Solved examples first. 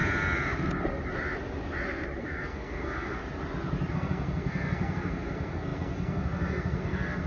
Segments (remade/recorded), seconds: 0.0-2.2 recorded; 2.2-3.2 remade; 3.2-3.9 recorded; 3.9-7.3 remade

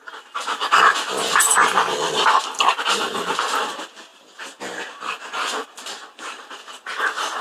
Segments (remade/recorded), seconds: 0.0-7.4 recorded

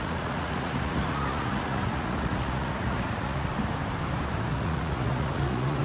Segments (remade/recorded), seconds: 0.0-3.5 remade; 3.5-4.5 recorded; 4.5-5.8 remade

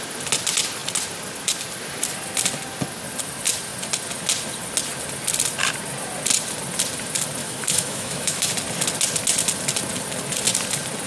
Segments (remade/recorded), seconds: 0.0-7.4 recorded; 7.4-8.5 remade; 8.5-11.1 recorded

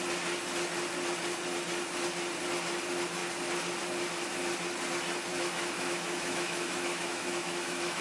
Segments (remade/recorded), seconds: 0.0-5.3 recorded; 5.3-8.0 remade